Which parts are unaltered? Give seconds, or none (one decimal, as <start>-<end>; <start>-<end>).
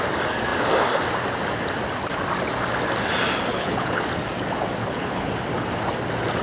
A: 0.0-3.5; 4.0-4.8; 5.3-6.4